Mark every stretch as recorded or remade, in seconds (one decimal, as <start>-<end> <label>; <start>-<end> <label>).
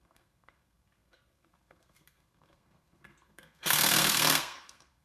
0.0-5.0 remade